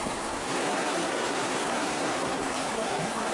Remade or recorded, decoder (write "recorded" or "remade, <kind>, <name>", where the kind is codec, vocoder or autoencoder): remade, codec, SNAC